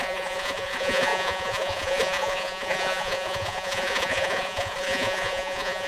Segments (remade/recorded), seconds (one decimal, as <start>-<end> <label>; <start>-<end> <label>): 0.0-5.9 remade